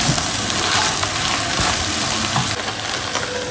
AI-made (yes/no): no